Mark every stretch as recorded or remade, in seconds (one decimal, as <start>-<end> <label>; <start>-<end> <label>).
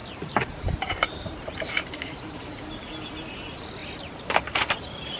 0.0-2.5 remade; 2.5-3.8 recorded; 3.8-4.8 remade; 4.8-5.2 recorded